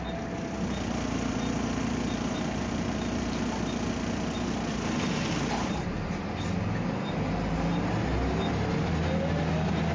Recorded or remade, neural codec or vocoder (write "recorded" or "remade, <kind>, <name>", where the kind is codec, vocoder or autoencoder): recorded